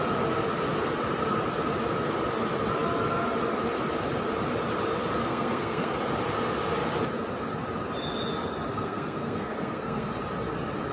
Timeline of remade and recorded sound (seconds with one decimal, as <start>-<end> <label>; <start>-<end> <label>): 0.0-5.2 recorded; 5.2-6.0 remade; 6.0-8.7 recorded; 8.7-10.1 remade; 10.1-10.9 recorded